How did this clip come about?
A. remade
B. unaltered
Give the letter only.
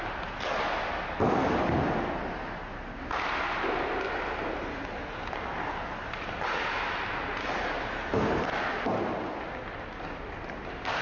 B